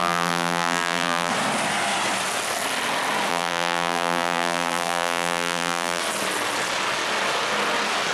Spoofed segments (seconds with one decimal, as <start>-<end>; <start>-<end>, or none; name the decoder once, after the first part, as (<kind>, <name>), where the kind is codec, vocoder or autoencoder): 0.0-1.3 (vocoder, BigVGAN v2); 3.3-6.0